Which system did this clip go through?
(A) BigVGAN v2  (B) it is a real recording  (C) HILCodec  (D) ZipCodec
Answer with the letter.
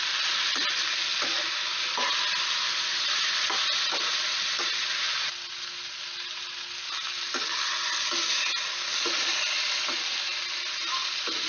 B